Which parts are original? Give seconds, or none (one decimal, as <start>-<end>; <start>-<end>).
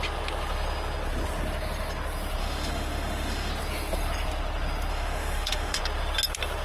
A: 0.0-2.4; 3.5-4.9; 5.8-6.6